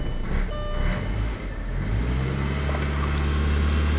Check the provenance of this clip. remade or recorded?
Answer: recorded